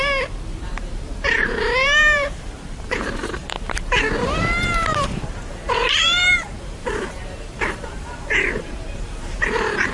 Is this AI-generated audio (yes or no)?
yes